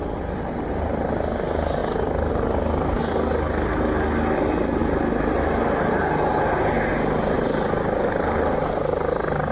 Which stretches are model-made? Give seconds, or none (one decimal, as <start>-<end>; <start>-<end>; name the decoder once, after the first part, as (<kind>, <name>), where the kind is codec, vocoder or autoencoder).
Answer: 6.9-9.5 (vocoder, BigVGAN v2)